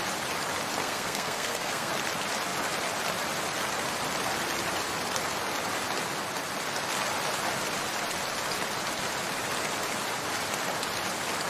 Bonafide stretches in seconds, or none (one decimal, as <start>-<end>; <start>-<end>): 0.0-0.8; 1.9-11.5

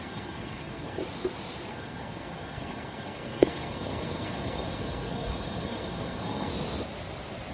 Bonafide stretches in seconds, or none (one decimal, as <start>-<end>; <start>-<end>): 1.0-1.7; 6.5-7.5

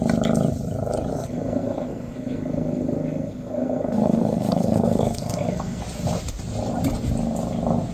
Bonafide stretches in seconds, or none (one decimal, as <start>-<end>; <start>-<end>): 0.0-1.1; 5.8-7.9

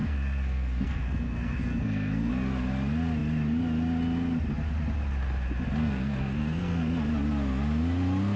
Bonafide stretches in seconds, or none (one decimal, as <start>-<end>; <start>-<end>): 2.3-5.8; 6.9-8.4

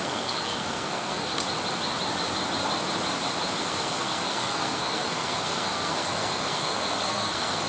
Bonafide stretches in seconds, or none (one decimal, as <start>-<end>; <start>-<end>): 1.3-3.6

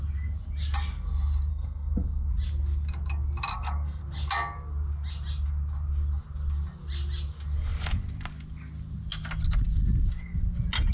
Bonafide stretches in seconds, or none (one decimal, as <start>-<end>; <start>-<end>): 0.0-1.5; 2.3-3.5; 4.0-10.9